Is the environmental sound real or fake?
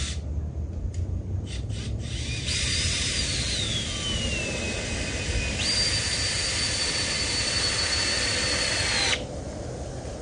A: real